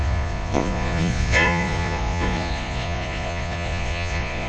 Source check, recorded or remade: remade